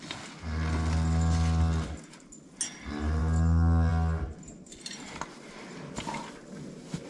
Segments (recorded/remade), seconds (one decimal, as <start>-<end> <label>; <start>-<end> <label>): 0.0-7.1 recorded